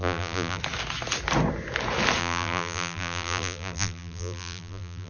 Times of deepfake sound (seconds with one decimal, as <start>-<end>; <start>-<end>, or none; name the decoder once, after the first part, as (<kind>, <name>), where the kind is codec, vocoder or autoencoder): 0.0-0.6 (vocoder, BigVGAN v2); 2.2-5.1